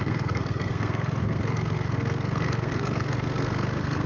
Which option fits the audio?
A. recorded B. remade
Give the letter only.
B